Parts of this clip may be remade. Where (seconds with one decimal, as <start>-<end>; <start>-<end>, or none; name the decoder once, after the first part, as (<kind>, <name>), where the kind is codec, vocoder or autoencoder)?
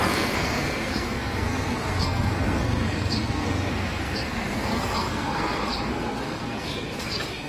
0.0-7.5 (codec, SNAC)